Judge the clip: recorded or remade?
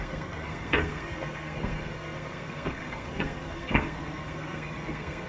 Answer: remade